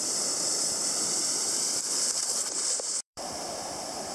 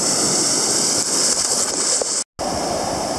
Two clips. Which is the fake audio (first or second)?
first